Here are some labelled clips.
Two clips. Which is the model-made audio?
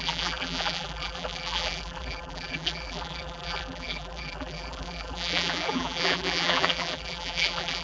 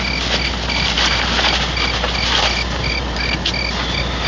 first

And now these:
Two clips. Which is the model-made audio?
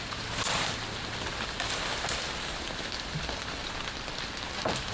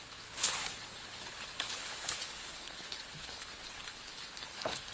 second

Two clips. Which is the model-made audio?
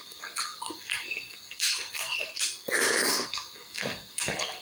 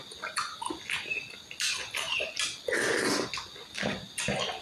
first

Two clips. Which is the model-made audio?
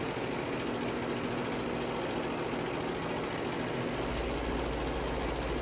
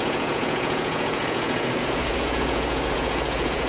second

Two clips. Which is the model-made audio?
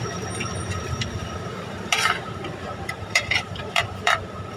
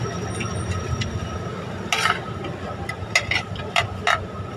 first